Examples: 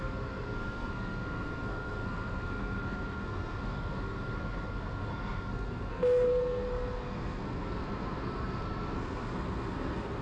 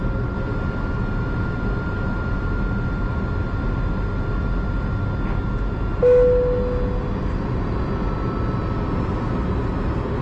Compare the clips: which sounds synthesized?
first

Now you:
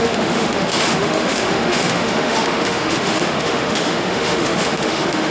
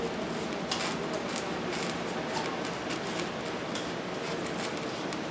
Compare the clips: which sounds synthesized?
first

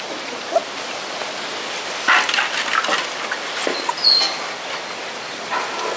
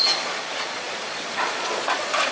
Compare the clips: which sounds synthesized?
second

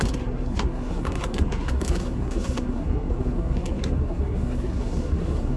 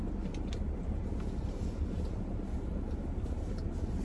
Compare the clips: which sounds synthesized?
first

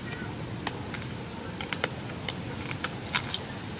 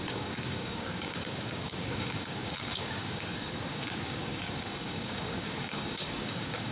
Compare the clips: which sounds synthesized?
second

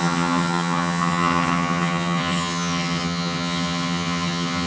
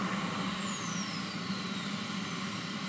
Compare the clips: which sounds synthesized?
first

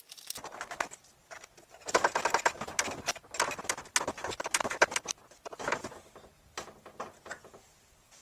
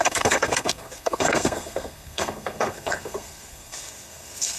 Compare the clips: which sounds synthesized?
second